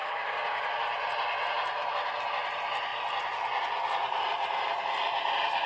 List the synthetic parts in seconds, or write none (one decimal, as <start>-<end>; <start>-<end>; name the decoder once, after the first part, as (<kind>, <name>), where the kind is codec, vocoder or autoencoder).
0.0-0.6 (codec, DAC)